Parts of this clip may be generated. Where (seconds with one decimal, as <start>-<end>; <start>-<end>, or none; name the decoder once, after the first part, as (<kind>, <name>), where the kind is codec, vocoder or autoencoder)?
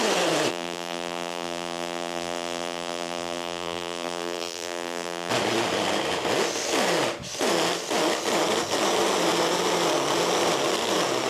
0.5-5.3 (vocoder, BigVGAN v2)